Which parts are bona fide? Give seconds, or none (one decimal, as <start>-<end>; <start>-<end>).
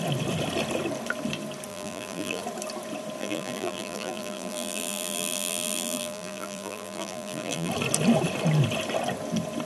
0.0-1.7; 2.4-3.2; 7.7-9.7